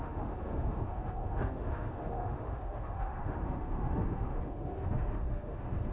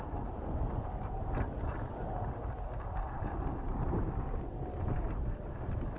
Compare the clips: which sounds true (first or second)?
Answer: second